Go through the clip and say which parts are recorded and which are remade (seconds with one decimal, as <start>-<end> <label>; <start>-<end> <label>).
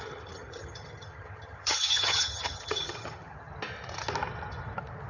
0.0-3.5 remade; 3.5-5.1 recorded